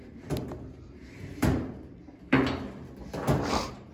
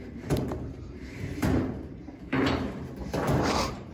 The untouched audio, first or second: first